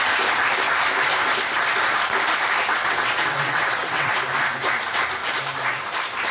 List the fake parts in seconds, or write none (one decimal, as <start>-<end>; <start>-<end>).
2.7-4.1